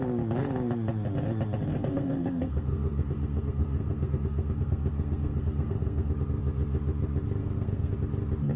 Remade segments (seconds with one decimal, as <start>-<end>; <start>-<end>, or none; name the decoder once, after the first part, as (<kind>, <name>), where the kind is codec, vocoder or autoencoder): 1.7-6.1 (codec, SNAC); 7.4-7.9